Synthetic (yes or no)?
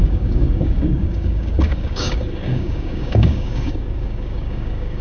yes